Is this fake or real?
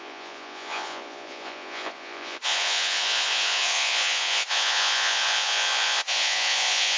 fake